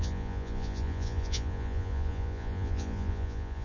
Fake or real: fake